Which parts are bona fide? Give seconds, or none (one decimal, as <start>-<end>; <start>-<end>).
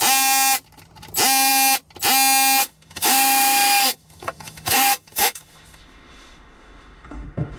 0.0-2.6